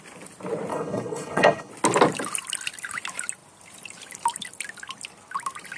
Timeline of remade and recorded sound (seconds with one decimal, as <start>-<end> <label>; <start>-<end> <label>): 0.0-0.7 recorded; 0.7-1.7 remade; 1.7-5.8 recorded